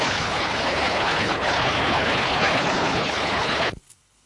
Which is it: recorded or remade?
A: remade